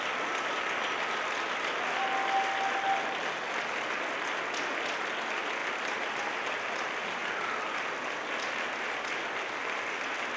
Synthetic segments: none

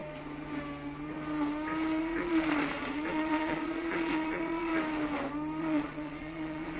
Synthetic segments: 2.0-4.7; 5.6-6.8

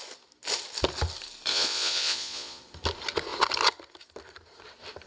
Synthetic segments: 1.5-2.6

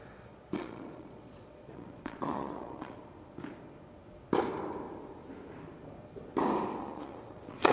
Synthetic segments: 0.0-3.0; 6.8-7.7

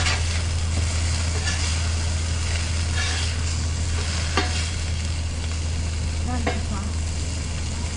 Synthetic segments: none

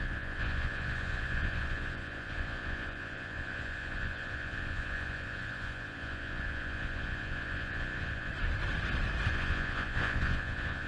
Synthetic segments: 0.0-8.3; 9.3-10.9

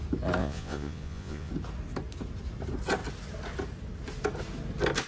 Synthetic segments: 0.4-1.5